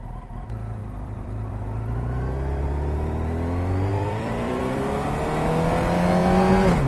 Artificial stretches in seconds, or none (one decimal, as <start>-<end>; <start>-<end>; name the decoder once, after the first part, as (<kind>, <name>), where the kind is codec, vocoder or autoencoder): 0.8-1.5 (vocoder, BigVGAN v2); 3.9-5.2